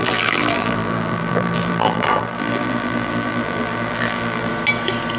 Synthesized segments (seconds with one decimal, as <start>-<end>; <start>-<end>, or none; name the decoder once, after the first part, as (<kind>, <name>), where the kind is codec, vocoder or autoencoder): 0.0-4.5 (vocoder, BigVGAN v2)